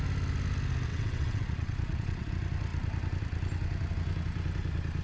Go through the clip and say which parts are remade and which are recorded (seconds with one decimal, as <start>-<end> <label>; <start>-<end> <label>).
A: 0.0-0.9 recorded; 0.9-2.3 remade; 2.3-5.0 recorded